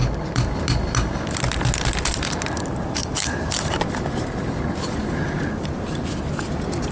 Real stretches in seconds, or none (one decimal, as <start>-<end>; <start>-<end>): 0.0-3.0; 3.9-5.0; 6.2-6.9